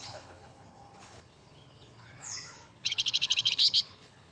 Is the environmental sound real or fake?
fake